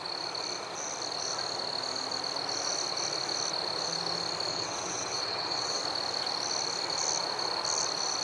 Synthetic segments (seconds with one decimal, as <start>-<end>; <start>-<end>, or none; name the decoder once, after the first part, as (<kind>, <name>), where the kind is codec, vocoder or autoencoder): 4.5-5.8 (vocoder, WaveNeXt)